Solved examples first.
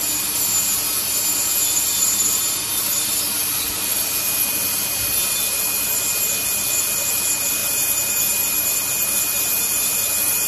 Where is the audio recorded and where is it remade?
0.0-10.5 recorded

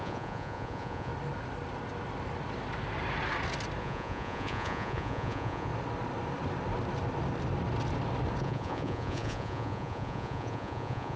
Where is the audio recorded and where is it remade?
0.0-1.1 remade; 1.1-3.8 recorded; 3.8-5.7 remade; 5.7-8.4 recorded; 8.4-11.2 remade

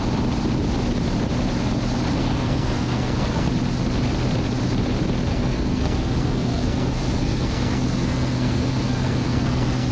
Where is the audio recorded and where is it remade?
0.0-2.2 recorded; 2.2-3.5 remade; 3.5-5.3 recorded; 5.3-9.9 remade

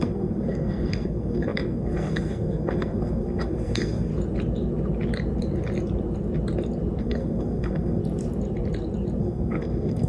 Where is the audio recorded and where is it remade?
0.0-4.1 remade; 4.1-7.0 recorded; 7.0-8.0 remade; 8.0-9.2 recorded; 9.2-10.1 remade

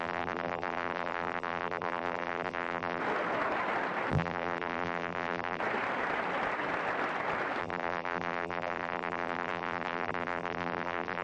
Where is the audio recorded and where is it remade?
0.0-3.0 remade; 3.0-4.1 recorded; 4.1-5.6 remade; 5.6-7.6 recorded; 7.6-11.2 remade